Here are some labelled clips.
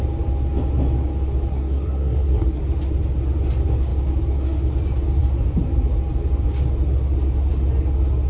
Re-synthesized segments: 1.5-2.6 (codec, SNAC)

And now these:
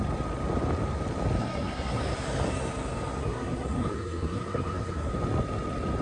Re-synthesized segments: 1.4-2.0 (codec, SNAC); 3.2-5.1

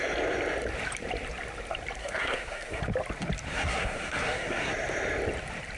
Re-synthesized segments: 2.0-2.8 (codec, SNAC); 3.5-4.7